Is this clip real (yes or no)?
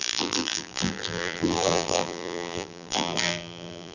no